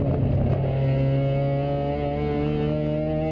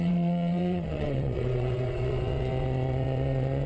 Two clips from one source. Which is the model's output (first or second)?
second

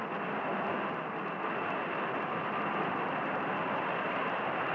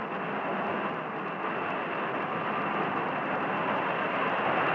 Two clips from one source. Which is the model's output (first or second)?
first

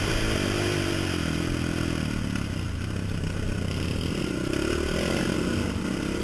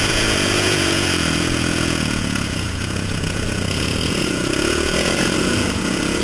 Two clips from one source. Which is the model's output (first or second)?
second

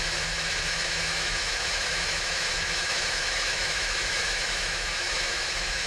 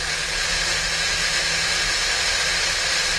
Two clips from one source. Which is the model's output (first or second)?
first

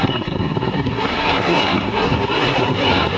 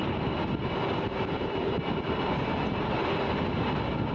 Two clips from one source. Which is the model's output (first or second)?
first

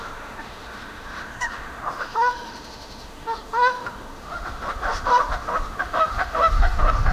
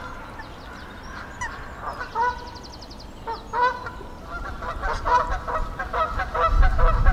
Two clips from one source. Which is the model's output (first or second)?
first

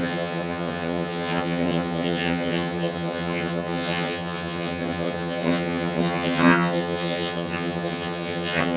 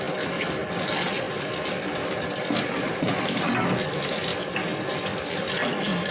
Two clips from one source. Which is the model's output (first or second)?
first